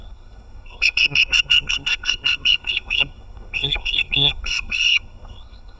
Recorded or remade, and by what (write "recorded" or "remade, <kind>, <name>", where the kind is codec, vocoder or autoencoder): remade, codec, SNAC